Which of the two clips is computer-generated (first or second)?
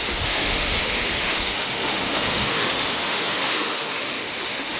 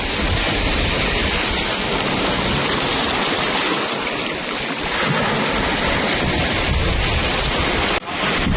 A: first